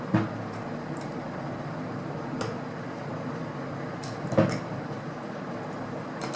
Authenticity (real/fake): real